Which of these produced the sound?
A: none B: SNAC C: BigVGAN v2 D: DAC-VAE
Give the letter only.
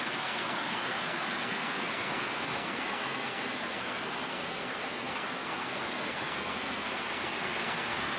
B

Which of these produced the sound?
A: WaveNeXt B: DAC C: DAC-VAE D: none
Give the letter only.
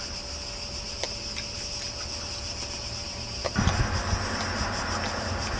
D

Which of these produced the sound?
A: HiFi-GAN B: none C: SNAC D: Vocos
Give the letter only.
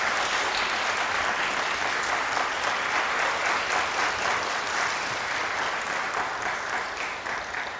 B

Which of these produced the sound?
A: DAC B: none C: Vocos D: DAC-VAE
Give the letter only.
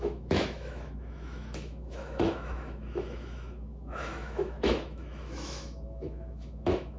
D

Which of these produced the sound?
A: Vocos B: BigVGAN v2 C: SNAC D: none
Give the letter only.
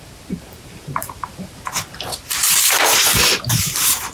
B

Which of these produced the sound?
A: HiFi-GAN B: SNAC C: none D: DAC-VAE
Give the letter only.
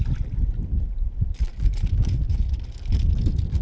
C